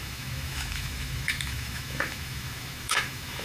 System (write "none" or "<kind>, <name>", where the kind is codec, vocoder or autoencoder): autoencoder, DAC-VAE